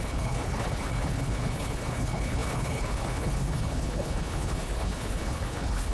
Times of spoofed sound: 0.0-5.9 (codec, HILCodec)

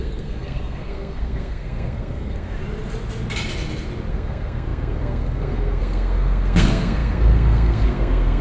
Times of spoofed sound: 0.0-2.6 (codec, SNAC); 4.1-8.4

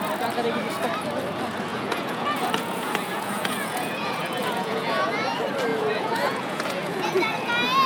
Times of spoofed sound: 1.7-5.1 (vocoder, Vocos); 5.7-7.5

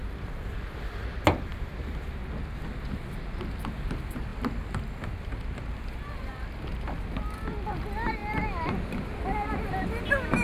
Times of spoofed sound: none

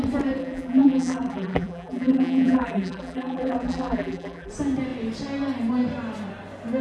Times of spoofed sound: 0.4-4.5 (vocoder, BigVGAN v2)

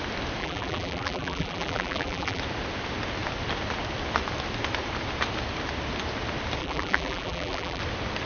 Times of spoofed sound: 0.4-2.4 (vocoder, BigVGAN v2); 6.6-7.8